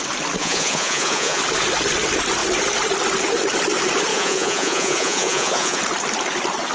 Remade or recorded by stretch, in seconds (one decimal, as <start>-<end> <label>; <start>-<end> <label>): 0.0-0.4 recorded; 0.4-1.4 remade; 1.4-4.1 recorded; 4.1-5.8 remade; 5.8-6.7 recorded